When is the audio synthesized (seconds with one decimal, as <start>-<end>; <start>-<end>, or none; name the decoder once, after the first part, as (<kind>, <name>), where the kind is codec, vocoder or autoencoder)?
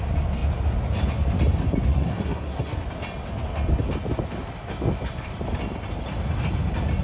1.9-2.8 (codec, SNAC)